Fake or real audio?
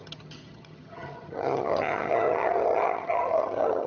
fake